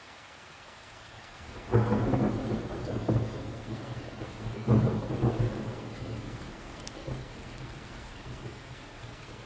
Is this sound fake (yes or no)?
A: yes